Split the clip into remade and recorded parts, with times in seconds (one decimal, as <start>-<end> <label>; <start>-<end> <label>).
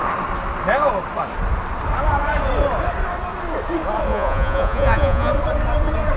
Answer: 0.0-4.1 recorded; 4.1-5.3 remade; 5.3-6.2 recorded